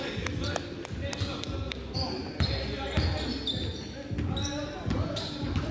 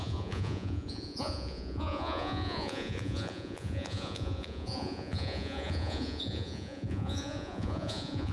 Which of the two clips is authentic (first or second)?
first